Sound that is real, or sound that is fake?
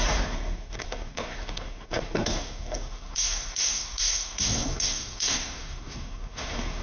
fake